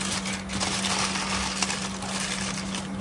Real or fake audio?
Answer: real